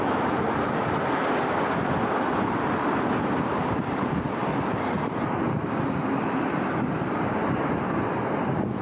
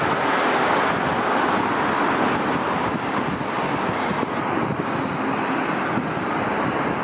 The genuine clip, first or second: second